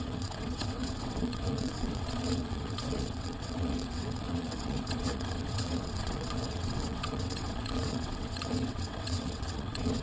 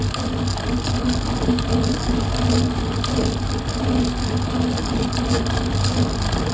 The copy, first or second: first